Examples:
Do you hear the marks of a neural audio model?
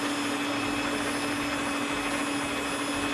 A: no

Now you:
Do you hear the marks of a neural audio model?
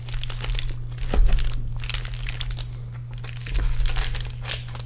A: no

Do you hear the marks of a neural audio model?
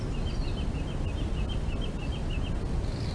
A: no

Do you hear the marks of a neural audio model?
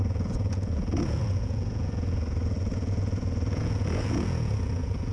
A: yes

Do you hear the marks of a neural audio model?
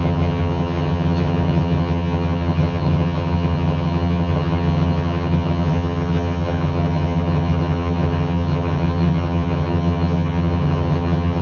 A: yes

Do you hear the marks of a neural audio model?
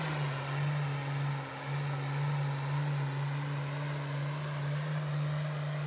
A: no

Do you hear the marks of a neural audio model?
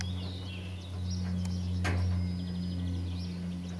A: no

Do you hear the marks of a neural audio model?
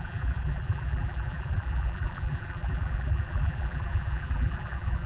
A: yes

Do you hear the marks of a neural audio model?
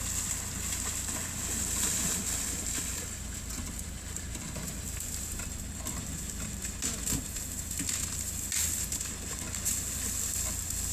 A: no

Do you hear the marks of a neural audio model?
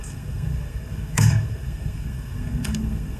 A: yes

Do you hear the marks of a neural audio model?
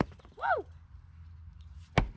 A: no